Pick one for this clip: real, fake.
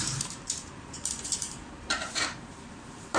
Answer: fake